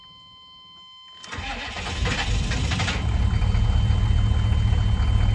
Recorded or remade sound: recorded